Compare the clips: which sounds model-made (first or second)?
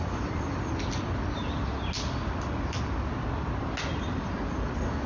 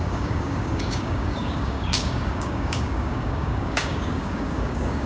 second